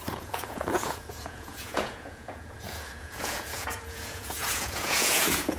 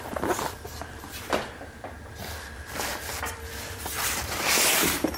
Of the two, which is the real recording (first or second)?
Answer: second